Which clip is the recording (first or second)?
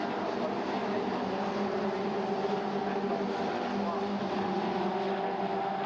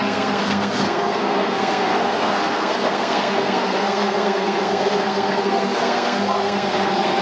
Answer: first